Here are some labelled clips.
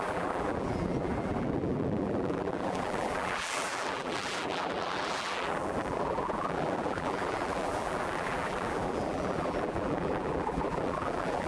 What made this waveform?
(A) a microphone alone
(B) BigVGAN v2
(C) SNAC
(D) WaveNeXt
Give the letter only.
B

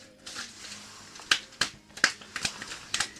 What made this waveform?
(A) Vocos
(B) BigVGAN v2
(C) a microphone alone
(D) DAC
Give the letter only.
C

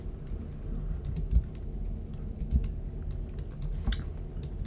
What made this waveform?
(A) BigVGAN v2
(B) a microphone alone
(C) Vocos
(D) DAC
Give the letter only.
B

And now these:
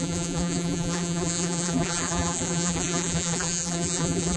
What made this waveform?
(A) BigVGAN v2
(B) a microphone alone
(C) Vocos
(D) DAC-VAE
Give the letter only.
A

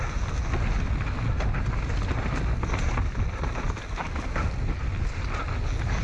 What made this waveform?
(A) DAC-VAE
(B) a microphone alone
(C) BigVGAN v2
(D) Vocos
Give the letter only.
B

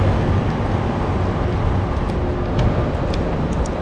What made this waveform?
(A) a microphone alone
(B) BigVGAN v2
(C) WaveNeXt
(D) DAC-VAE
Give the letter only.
A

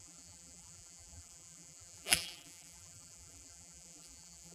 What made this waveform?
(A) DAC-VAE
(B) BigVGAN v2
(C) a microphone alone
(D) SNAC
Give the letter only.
B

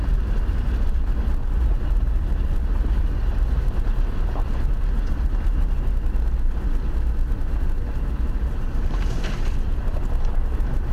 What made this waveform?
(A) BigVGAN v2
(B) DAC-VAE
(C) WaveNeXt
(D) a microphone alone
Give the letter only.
D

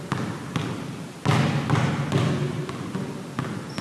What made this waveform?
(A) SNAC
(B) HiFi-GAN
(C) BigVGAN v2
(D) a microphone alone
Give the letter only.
D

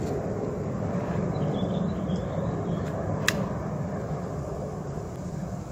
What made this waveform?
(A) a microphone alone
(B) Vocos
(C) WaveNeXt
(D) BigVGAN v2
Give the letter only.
A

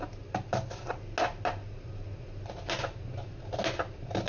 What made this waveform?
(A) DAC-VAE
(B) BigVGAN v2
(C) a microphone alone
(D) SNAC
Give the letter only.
C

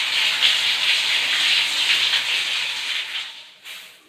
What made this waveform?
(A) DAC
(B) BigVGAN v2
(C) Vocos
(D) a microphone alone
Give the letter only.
D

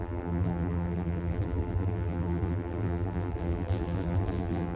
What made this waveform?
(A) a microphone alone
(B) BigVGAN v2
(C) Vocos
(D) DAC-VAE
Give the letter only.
B